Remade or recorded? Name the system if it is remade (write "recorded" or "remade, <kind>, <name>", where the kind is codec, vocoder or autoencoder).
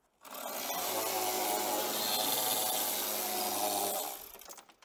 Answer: recorded